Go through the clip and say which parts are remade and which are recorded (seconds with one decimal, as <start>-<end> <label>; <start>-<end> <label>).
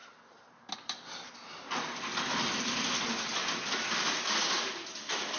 0.0-5.4 recorded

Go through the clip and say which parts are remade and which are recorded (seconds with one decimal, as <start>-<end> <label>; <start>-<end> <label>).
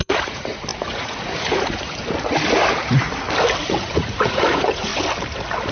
0.0-2.0 remade; 2.0-3.6 recorded; 3.6-4.9 remade; 4.9-5.7 recorded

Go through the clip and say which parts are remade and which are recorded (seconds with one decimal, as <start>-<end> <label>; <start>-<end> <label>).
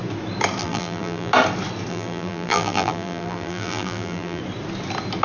0.0-0.6 recorded; 0.6-1.3 remade; 1.3-1.9 recorded; 1.9-4.4 remade; 4.4-5.2 recorded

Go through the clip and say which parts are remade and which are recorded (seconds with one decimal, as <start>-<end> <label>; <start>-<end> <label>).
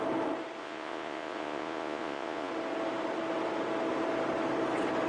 0.0-0.6 recorded; 0.6-2.5 remade; 2.5-5.1 recorded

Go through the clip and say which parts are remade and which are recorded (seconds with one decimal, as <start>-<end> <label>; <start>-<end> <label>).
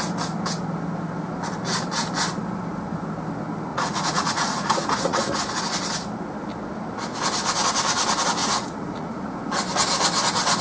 0.0-3.7 recorded; 3.7-5.6 remade; 5.6-8.4 recorded; 8.4-9.3 remade; 9.3-10.6 recorded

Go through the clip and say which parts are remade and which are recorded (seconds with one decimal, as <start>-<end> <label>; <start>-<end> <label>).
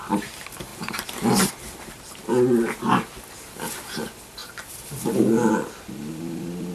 0.0-6.7 recorded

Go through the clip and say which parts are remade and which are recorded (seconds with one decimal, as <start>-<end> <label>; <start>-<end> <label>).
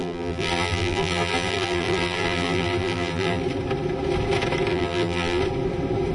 0.0-3.4 remade; 3.4-4.7 recorded; 4.7-5.4 remade; 5.4-6.1 recorded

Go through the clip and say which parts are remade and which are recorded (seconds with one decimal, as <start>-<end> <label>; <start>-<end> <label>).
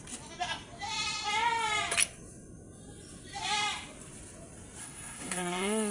0.0-4.8 recorded; 4.8-5.9 remade